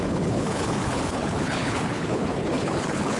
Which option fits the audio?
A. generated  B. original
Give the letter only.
A